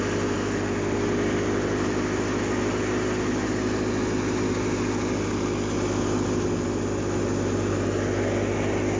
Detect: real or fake real